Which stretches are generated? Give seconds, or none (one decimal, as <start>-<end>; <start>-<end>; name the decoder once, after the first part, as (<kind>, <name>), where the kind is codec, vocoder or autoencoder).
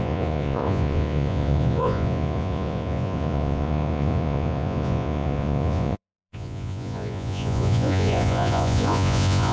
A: 0.0-9.5 (vocoder, Vocos)